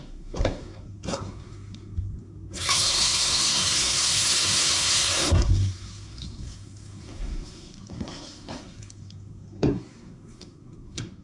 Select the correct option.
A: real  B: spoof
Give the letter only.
B